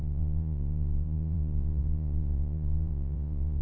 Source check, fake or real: fake